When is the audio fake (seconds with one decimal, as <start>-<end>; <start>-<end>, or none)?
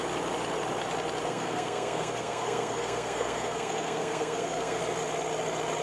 1.3-4.8